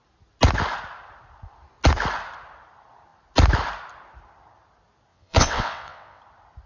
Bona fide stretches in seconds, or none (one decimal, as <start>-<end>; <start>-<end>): 0.0-5.1; 6.2-6.7